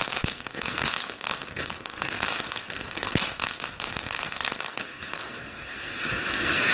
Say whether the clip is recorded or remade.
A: remade